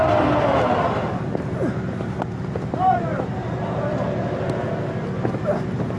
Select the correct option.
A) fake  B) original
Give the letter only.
B